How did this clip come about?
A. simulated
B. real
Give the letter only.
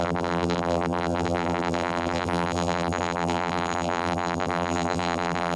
A